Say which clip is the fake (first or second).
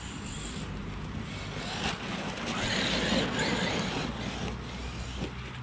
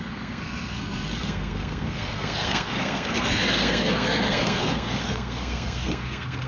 second